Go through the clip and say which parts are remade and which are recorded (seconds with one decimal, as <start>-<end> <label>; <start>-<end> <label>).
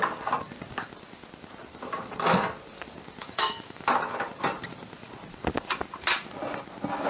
0.0-3.2 recorded; 3.2-3.9 remade; 3.9-7.1 recorded